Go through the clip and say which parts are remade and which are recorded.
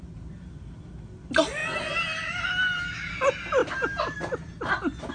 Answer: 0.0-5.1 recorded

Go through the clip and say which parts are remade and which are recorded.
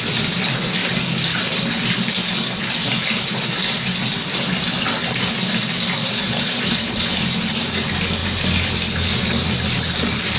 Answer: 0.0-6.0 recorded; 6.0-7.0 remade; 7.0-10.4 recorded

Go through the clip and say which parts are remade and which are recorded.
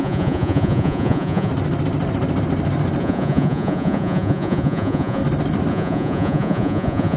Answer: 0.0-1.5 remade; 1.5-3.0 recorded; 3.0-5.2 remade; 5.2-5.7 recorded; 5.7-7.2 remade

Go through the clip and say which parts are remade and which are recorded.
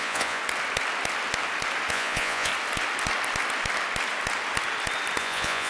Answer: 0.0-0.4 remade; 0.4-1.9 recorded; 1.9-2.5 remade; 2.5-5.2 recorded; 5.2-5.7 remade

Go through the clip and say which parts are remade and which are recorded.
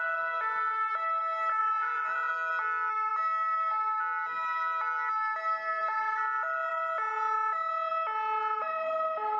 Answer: 0.0-1.6 recorded; 1.6-2.3 remade; 2.3-9.4 recorded